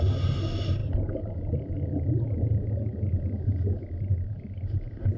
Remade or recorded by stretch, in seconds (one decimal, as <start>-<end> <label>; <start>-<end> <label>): 0.0-5.2 recorded